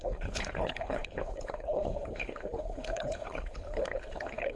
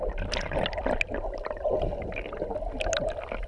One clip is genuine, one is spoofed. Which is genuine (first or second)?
second